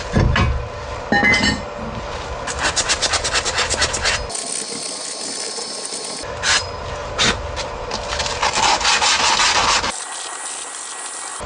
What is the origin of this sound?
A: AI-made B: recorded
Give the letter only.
B